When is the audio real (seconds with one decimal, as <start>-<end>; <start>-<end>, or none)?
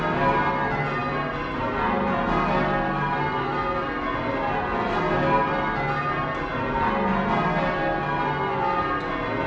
0.0-9.5